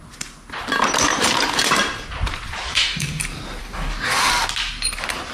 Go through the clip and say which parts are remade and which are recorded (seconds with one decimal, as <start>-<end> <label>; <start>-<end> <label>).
0.0-2.7 recorded; 2.7-3.2 remade; 3.2-3.6 recorded; 3.6-4.3 remade; 4.3-5.3 recorded